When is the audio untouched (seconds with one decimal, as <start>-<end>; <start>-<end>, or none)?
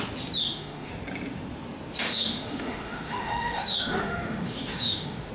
0.0-0.4; 0.9-2.1